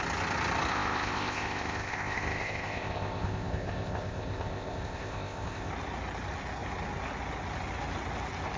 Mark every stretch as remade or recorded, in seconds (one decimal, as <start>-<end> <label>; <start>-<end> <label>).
0.0-0.7 recorded; 0.7-5.7 remade; 5.7-8.6 recorded